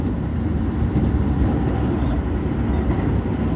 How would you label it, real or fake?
real